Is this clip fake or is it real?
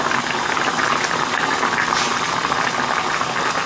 real